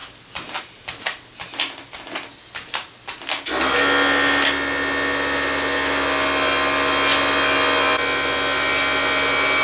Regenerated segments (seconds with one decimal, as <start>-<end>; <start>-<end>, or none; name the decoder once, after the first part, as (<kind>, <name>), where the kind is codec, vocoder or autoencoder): none